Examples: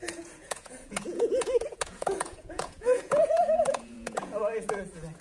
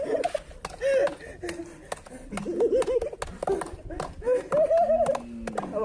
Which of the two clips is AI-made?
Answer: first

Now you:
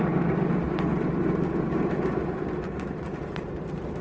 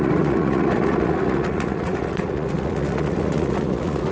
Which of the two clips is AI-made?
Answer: second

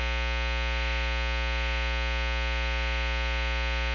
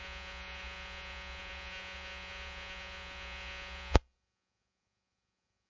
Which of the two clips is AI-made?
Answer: second